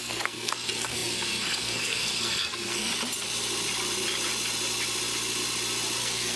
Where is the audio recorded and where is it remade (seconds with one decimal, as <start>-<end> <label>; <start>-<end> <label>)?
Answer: 0.0-2.9 remade; 2.9-6.0 recorded; 6.0-6.4 remade